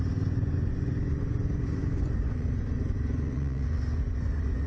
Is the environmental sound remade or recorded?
remade